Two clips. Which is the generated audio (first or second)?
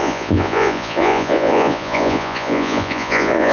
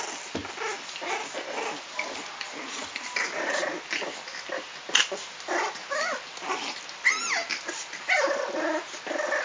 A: first